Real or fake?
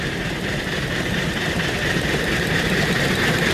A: fake